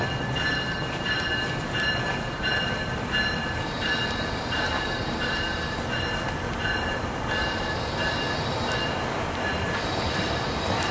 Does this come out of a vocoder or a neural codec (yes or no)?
no